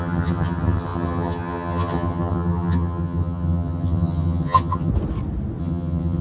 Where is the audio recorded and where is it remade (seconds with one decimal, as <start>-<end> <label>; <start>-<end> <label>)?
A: 0.0-4.9 remade; 4.9-5.6 recorded; 5.6-6.2 remade